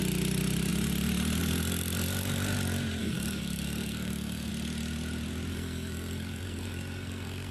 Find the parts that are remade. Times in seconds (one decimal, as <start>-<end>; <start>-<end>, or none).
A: 3.0-4.5; 5.5-7.5